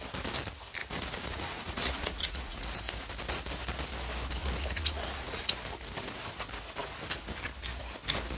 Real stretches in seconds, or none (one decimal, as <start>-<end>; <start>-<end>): 0.0-0.8; 2.6-4.4; 5.5-8.4